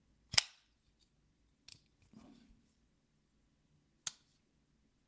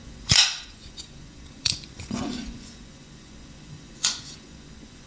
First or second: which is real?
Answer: first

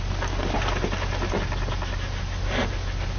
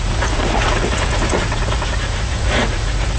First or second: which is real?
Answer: first